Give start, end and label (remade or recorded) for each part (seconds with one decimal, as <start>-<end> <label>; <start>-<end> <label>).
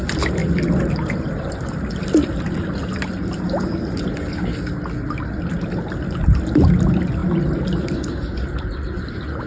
0.0-9.5 recorded